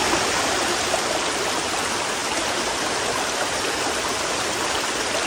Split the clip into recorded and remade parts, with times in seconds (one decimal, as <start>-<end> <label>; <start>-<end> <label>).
0.0-5.3 recorded